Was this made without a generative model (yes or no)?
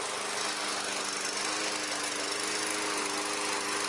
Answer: yes